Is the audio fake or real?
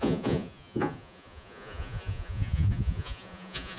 fake